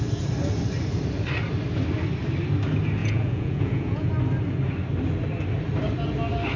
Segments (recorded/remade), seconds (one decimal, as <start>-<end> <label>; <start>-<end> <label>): 0.0-3.0 recorded; 3.0-4.1 remade; 4.1-6.6 recorded